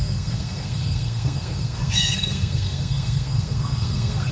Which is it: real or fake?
fake